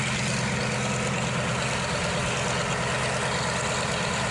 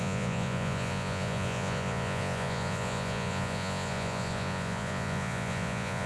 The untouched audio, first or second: first